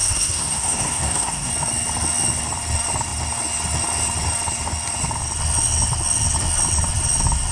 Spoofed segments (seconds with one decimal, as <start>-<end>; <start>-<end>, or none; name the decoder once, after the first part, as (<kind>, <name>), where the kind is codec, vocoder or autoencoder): 0.0-1.5 (codec, SNAC)